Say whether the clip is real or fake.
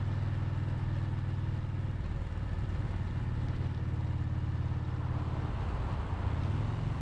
real